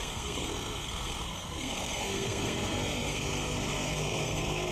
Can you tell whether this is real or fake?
fake